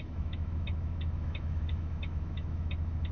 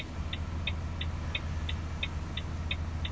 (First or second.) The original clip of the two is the second